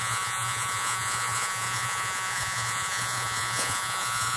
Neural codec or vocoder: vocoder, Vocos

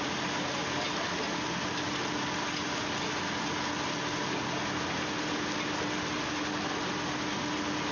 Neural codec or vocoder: none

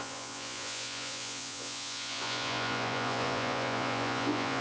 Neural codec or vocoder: vocoder, Vocos